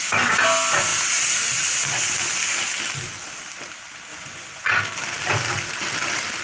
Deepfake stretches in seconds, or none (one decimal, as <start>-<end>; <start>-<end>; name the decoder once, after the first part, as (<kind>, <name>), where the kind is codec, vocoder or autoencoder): 4.1-4.7 (vocoder, Vocos)